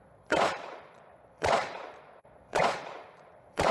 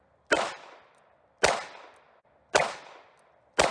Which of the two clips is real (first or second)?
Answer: second